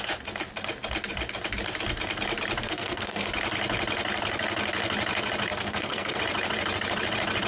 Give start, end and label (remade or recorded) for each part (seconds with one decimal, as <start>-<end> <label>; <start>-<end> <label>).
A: 0.0-2.6 recorded; 2.6-3.3 remade; 3.3-5.5 recorded; 5.5-6.2 remade; 6.2-7.5 recorded